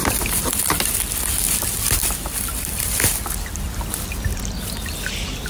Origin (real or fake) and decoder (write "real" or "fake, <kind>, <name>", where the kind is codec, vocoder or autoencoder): real